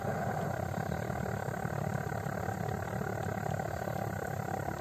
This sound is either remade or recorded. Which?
recorded